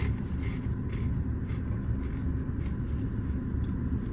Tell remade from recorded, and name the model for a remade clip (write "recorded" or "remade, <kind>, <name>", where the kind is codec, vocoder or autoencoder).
recorded